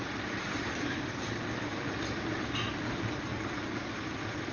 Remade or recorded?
remade